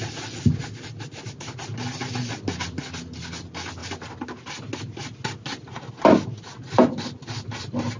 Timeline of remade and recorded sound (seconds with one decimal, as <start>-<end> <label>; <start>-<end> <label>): 0.0-8.0 recorded